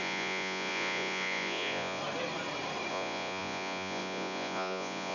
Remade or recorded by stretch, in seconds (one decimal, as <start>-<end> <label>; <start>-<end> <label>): 0.0-2.0 remade; 2.0-2.9 recorded; 2.9-5.1 remade